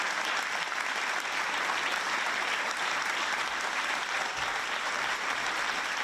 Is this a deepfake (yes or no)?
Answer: no